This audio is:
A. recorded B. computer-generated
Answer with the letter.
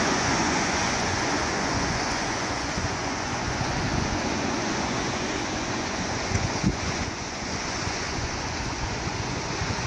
B